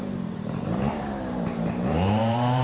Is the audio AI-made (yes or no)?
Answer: yes